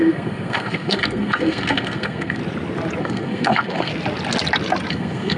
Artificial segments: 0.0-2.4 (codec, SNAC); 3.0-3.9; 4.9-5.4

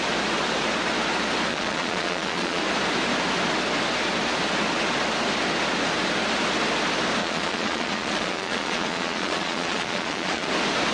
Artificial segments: 1.5-2.6 (vocoder, Vocos); 7.2-10.5

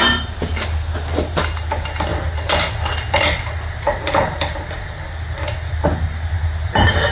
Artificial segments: none

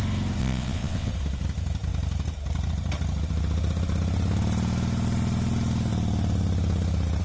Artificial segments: 0.4-1.1 (vocoder, WaveNeXt)

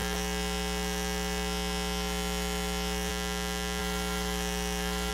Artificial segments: 0.0-3.1 (autoencoder, DAC-VAE); 3.8-5.1

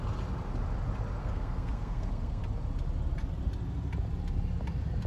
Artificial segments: 1.2-2.4 (codec, SNAC)